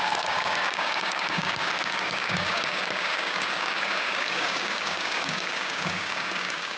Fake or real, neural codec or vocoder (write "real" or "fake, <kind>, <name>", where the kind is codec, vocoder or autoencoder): fake, codec, DAC